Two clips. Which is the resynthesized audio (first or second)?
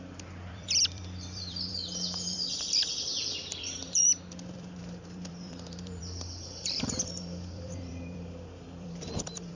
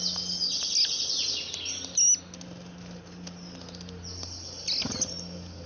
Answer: first